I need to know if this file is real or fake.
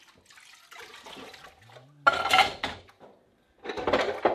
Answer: real